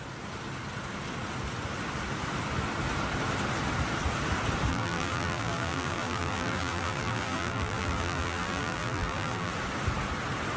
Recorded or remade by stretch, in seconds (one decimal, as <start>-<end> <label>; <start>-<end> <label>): 0.0-4.7 recorded; 4.7-9.5 remade; 9.5-10.6 recorded